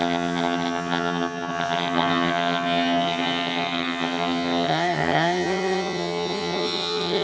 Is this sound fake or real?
fake